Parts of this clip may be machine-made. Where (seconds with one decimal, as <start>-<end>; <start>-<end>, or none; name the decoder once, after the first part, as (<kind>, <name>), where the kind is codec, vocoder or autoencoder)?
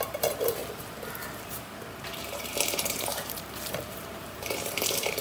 0.0-5.2 (vocoder, BigVGAN v2)